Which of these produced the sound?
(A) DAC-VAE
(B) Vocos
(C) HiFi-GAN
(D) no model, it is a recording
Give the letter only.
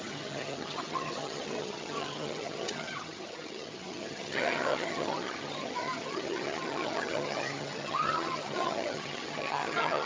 C